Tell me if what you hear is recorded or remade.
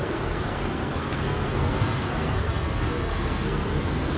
remade